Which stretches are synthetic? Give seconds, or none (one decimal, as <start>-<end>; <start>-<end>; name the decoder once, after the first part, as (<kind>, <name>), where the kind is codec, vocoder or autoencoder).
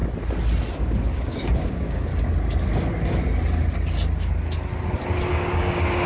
0.7-2.1 (codec, DAC); 5.3-6.1